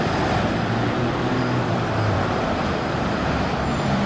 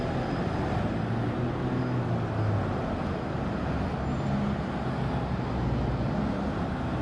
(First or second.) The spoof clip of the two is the first